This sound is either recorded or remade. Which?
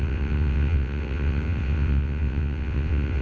remade